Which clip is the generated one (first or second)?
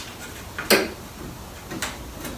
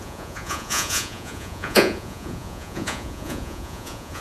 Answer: second